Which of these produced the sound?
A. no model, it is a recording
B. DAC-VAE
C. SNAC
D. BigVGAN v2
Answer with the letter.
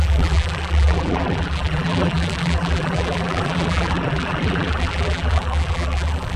D